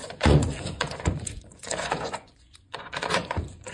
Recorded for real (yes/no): no